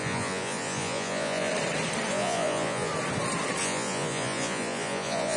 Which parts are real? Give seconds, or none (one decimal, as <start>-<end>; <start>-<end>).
1.5-2.1; 2.9-3.6